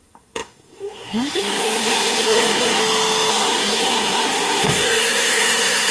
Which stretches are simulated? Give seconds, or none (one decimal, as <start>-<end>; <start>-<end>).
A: 0.0-2.8; 3.3-5.9